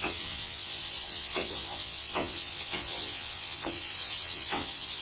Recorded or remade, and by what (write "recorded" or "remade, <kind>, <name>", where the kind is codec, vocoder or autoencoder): remade, vocoder, WaveNeXt